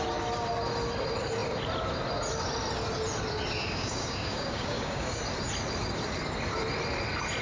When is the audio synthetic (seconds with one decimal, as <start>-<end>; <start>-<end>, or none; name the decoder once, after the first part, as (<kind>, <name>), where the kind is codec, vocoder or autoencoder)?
3.6-5.2 (codec, DAC)